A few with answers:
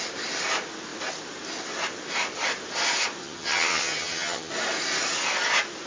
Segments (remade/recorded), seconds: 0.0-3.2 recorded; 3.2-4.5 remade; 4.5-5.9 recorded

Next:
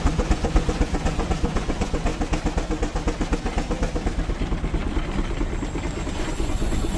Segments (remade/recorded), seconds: 0.0-2.1 remade; 2.1-6.2 recorded; 6.2-7.0 remade

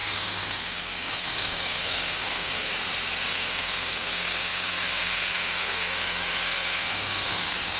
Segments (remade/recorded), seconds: 0.0-2.7 remade; 2.7-3.3 recorded; 3.3-7.8 remade

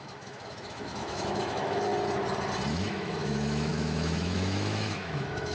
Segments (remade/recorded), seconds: 0.0-1.9 remade; 1.9-2.7 recorded; 2.7-5.5 remade

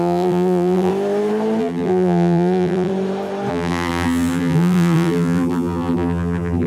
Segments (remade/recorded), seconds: 0.0-0.9 remade; 0.9-1.6 recorded; 1.6-2.9 remade; 2.9-3.5 recorded; 3.5-6.7 remade